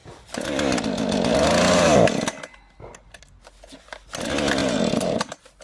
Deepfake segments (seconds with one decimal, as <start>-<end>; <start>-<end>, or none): 4.6-5.6